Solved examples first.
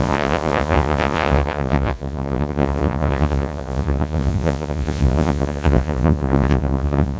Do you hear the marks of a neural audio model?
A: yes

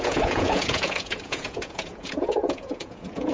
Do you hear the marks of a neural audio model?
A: yes